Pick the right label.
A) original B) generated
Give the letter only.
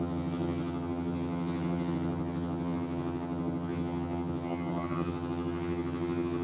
B